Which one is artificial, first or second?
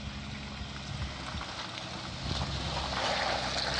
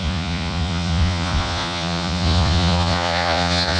second